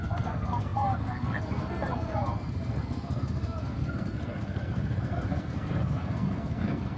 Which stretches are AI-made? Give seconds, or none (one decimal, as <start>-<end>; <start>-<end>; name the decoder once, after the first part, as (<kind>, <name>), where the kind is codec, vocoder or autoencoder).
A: 0.0-7.0 (codec, SNAC)